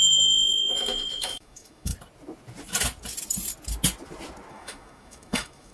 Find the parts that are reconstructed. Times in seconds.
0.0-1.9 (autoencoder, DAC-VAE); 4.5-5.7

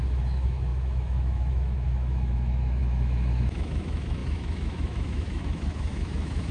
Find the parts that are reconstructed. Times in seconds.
0.0-6.5 (autoencoder, DAC-VAE)

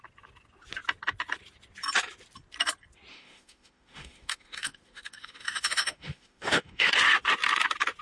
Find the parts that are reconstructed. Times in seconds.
3.1-6.9 (autoencoder, DAC-VAE)

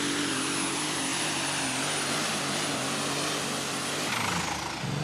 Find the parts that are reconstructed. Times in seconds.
none

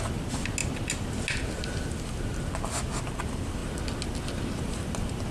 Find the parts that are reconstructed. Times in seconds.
none

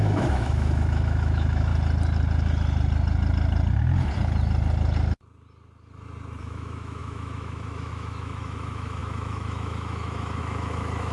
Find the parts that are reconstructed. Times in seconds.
0.0-1.7 (autoencoder, DAC-VAE); 6.4-11.1

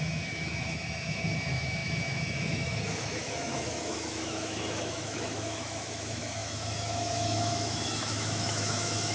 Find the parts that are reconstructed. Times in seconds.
0.0-9.1 (autoencoder, DAC-VAE)